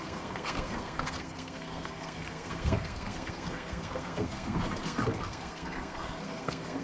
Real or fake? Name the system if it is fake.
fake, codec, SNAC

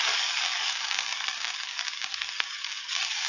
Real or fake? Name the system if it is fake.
fake, codec, DAC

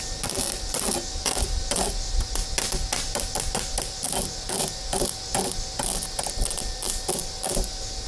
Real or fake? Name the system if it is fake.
real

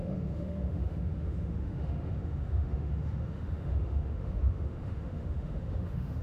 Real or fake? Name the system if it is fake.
fake, autoencoder, DAC-VAE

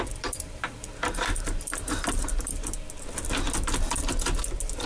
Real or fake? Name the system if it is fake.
real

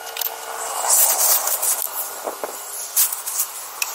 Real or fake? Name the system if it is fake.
real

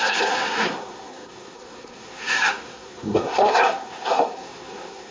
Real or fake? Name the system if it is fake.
fake, codec, SNAC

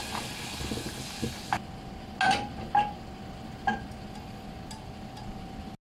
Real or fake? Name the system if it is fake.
real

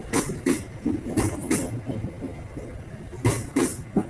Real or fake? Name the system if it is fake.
real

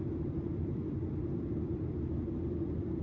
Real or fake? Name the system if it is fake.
fake, vocoder, BigVGAN v2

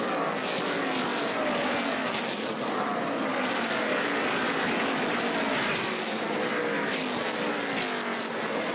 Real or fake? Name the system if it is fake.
real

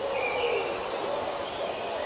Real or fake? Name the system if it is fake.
real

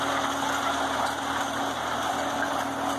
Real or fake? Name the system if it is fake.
real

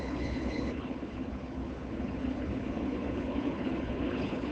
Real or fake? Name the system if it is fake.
fake, codec, HILCodec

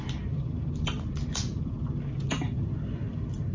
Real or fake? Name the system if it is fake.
real